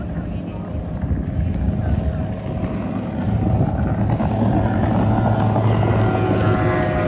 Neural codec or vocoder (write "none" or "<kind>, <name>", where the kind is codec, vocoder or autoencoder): none